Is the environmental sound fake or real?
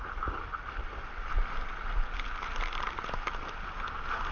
real